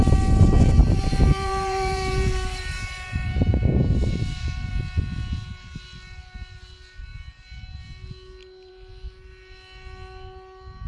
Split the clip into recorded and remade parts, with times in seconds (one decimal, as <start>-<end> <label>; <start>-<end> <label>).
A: 0.0-0.8 recorded; 0.8-4.7 remade; 4.7-10.9 recorded